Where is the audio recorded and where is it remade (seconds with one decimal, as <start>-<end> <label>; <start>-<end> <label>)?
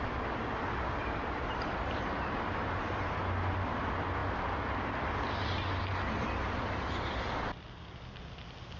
0.0-1.0 recorded; 1.0-3.1 remade; 3.1-8.8 recorded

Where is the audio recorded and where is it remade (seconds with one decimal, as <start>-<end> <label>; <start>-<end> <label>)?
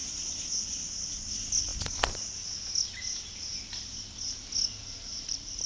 0.0-4.8 recorded; 4.8-5.7 remade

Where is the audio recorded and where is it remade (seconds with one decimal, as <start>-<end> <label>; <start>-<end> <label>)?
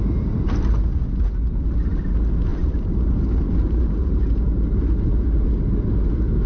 0.0-2.5 recorded; 2.5-5.5 remade; 5.5-6.5 recorded